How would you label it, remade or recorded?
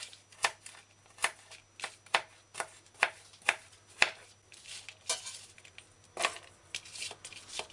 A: recorded